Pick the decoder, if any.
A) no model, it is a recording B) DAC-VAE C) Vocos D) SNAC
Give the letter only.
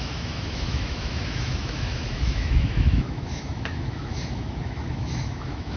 B